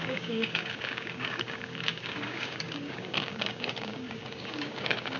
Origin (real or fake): fake